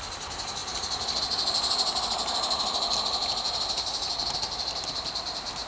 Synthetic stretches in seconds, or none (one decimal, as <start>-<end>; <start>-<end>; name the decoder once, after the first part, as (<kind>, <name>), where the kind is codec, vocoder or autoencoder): none

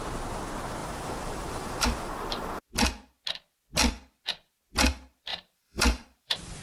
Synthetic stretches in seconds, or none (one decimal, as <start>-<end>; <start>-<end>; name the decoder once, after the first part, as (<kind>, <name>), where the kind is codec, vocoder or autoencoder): 0.8-2.6 (vocoder, BigVGAN v2); 5.3-6.6

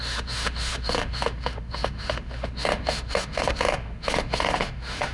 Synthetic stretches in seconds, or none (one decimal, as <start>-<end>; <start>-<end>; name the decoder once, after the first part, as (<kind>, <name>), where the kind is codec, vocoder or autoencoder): 0.0-5.1 (autoencoder, DAC-VAE)

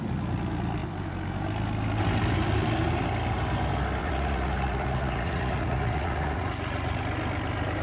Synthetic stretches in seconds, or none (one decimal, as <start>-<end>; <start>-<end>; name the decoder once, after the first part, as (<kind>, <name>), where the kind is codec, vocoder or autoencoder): 4.0-7.0 (vocoder, Vocos)

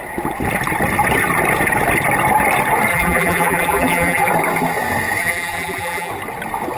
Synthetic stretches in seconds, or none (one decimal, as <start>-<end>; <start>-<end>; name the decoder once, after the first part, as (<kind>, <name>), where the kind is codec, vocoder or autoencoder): 2.9-4.3 (vocoder, BigVGAN v2); 5.2-6.1

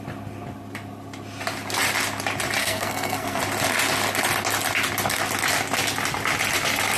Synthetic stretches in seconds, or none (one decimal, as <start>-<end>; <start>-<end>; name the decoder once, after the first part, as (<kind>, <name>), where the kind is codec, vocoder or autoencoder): 2.6-3.4 (codec, SNAC)

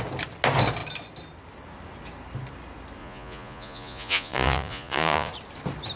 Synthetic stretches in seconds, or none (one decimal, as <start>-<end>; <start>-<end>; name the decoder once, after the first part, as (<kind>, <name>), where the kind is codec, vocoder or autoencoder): 3.0-5.3 (vocoder, Vocos)

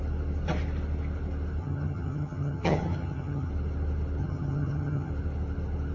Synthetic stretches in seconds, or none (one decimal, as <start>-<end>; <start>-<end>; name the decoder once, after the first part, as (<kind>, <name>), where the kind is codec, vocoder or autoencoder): 1.6-3.5 (vocoder, HiFi-GAN); 4.2-5.1